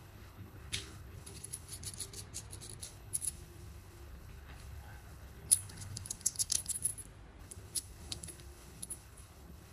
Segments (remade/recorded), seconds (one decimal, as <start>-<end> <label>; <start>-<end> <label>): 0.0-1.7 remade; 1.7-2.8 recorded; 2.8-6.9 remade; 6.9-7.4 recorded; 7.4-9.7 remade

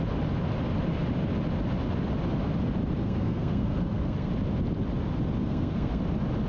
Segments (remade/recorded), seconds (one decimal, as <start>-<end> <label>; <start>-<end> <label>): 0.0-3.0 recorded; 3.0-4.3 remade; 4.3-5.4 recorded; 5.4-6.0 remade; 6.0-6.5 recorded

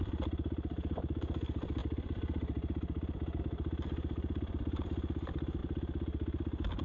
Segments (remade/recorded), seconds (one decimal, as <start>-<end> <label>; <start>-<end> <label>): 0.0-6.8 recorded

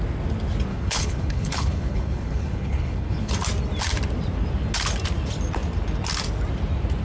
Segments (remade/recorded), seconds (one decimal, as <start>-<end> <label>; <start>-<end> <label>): 0.0-0.7 recorded; 0.7-3.3 remade; 3.3-7.0 recorded